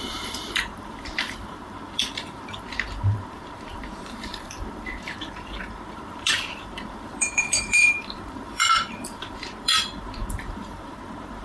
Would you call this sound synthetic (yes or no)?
yes